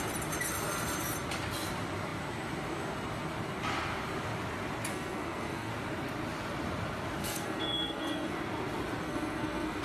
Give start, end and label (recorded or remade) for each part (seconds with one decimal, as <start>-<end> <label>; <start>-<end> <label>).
0.0-4.9 recorded; 4.9-5.7 remade; 5.7-7.2 recorded; 7.2-8.4 remade; 8.4-9.0 recorded; 9.0-9.8 remade

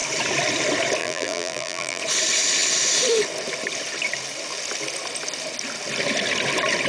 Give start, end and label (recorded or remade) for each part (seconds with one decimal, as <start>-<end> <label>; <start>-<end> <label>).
0.0-1.0 recorded; 1.0-2.0 remade; 2.0-6.9 recorded

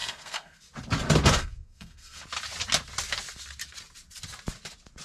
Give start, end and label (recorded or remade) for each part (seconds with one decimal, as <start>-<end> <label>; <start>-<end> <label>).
0.0-0.6 remade; 0.6-1.4 recorded; 1.4-2.2 remade; 2.2-5.0 recorded

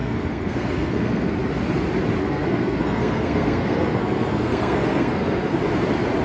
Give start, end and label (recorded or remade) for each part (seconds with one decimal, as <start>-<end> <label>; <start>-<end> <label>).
0.0-1.3 remade; 1.3-2.2 recorded; 2.2-5.6 remade; 5.6-6.2 recorded